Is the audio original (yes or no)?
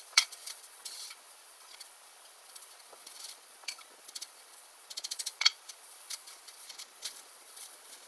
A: no